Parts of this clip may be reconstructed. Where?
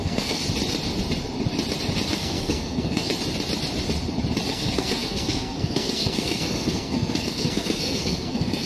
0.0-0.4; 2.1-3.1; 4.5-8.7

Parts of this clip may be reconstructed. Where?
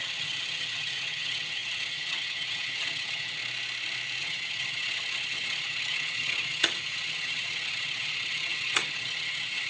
0.0-3.4; 4.2-9.7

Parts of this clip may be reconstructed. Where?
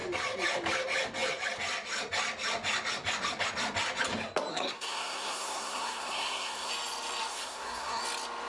4.5-6.7; 7.3-8.0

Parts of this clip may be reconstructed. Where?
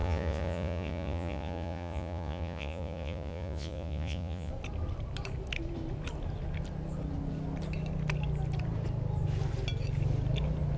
0.0-4.5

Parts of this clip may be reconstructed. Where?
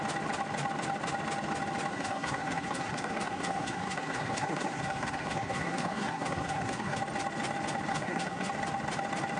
1.9-7.0; 7.9-8.5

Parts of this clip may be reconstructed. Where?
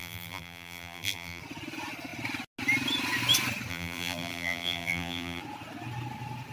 0.0-1.4; 3.7-5.4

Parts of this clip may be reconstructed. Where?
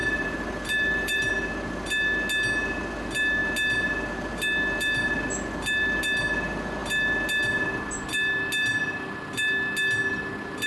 0.0-1.3